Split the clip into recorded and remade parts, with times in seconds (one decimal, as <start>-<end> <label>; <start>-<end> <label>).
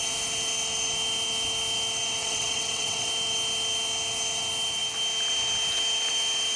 0.0-2.2 recorded; 2.2-3.1 remade; 3.1-6.6 recorded